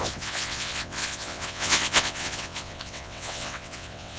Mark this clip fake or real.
fake